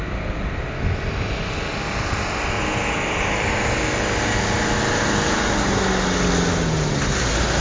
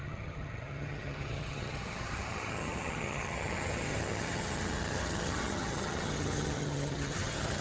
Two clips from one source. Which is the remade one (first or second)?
second